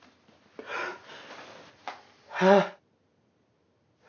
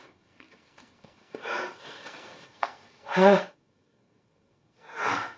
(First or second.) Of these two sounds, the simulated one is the second